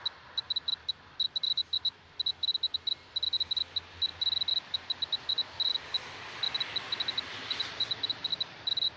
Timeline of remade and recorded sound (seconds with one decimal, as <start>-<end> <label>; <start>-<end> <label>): 0.0-9.0 recorded